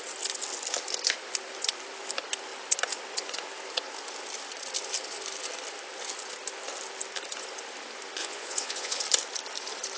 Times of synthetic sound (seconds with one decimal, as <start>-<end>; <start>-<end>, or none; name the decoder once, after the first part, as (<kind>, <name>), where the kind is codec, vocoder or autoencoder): 8.2-9.0 (vocoder, Vocos)